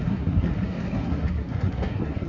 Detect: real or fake fake